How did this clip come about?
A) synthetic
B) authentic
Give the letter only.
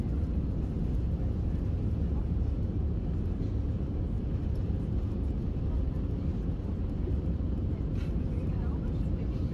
B